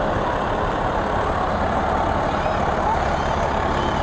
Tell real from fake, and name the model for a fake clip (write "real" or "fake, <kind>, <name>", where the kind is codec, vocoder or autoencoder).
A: real